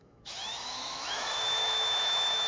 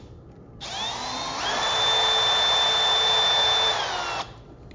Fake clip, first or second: first